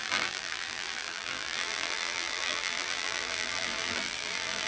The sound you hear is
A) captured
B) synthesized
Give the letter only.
B